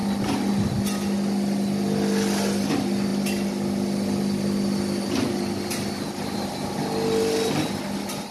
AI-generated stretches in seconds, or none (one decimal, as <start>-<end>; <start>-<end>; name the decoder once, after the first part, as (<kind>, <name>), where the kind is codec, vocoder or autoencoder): none